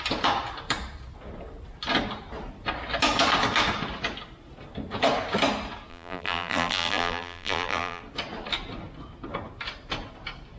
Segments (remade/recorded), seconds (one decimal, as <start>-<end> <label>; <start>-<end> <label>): 0.0-5.9 recorded; 5.9-8.0 remade; 8.0-10.6 recorded